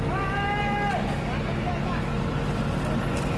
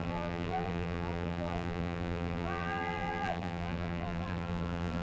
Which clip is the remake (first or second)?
second